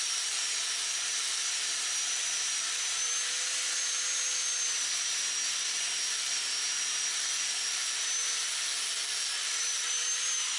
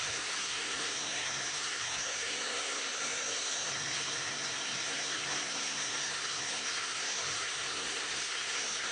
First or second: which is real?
first